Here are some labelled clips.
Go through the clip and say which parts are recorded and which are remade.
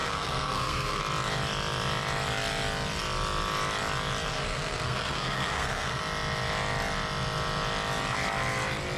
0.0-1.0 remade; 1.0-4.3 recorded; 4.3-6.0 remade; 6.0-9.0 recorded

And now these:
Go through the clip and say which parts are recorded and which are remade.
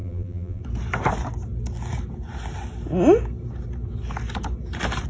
0.0-0.6 remade; 0.6-5.1 recorded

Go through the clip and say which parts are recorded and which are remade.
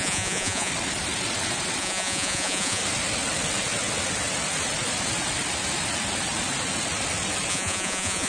0.0-0.7 remade; 0.7-1.8 recorded; 1.8-2.8 remade; 2.8-7.5 recorded; 7.5-8.3 remade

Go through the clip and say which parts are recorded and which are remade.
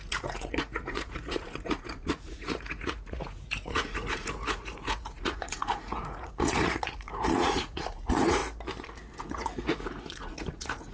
0.0-8.4 remade; 8.4-9.2 recorded; 9.2-10.9 remade